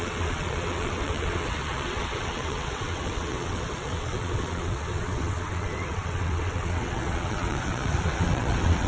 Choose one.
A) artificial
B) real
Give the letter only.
A